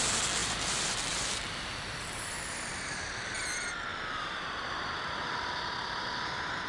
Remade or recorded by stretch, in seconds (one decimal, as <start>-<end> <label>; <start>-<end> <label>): 0.0-0.4 recorded; 0.4-2.4 remade; 2.4-3.9 recorded; 3.9-5.5 remade; 5.5-6.7 recorded